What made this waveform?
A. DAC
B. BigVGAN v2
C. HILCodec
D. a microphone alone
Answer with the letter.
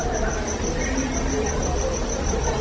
B